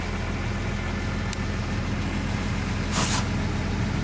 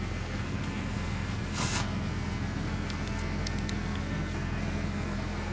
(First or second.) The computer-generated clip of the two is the second